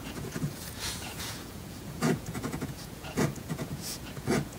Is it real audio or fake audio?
fake